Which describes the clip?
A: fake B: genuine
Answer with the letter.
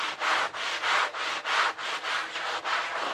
B